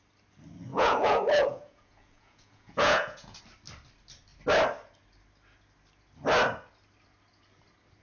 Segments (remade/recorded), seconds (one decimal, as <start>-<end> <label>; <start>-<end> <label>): 0.0-0.7 recorded; 0.7-3.4 remade; 3.4-8.0 recorded